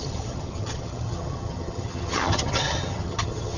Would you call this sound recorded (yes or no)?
no